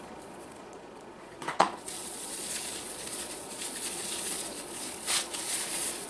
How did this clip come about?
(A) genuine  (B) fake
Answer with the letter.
B